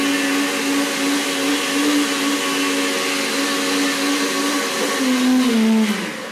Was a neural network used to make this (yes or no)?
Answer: no